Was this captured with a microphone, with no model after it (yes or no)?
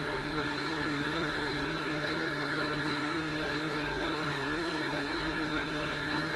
no